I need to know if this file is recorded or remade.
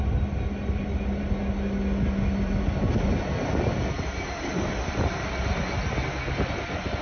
recorded